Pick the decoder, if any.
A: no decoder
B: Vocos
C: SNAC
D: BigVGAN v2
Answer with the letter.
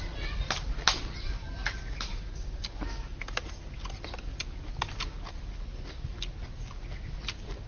A